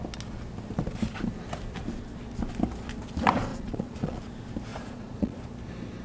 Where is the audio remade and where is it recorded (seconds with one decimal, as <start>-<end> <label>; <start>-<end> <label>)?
0.0-3.5 recorded; 3.5-4.2 remade; 4.2-4.7 recorded; 4.7-5.4 remade; 5.4-6.0 recorded